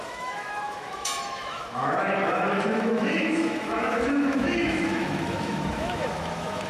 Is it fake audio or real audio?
fake